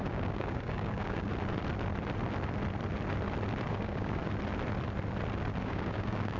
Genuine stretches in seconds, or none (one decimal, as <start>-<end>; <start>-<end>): 1.3-3.7; 4.2-5.6

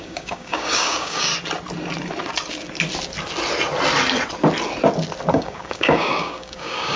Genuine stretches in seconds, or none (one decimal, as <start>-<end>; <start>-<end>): 1.3-5.3

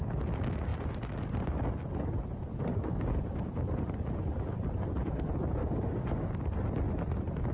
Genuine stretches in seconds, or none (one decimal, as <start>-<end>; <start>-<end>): 0.0-2.5; 3.2-5.6; 6.3-7.5

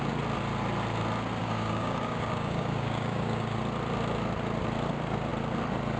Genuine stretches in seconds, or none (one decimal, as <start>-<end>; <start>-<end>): 0.0-1.4; 3.6-6.0

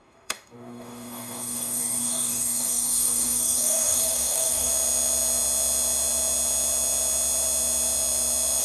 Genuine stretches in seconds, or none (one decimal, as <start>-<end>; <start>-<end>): 4.7-8.6

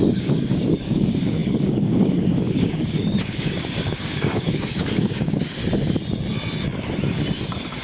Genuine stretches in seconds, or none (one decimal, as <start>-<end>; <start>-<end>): 5.6-7.8

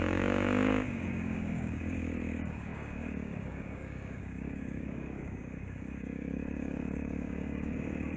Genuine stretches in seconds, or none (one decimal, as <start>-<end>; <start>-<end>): none